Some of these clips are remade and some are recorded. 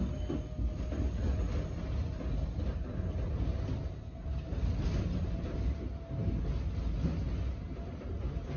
recorded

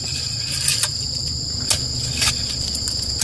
recorded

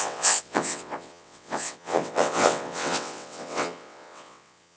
remade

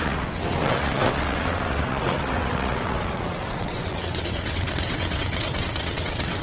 remade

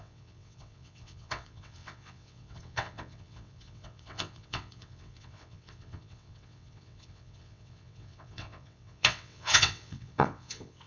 remade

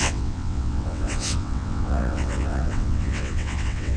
remade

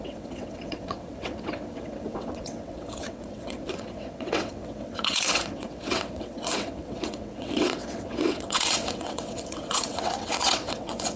remade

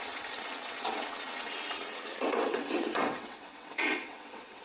remade